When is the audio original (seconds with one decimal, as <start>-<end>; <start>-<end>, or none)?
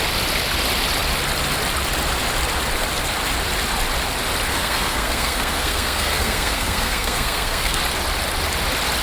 0.0-4.5; 7.8-9.0